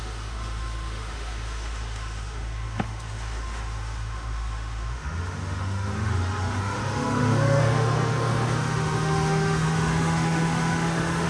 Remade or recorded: remade